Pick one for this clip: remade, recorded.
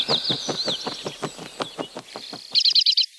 recorded